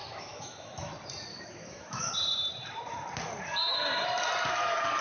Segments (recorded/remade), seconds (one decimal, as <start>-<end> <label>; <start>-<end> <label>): 0.0-0.9 remade; 0.9-1.3 recorded; 1.3-2.1 remade; 2.1-5.0 recorded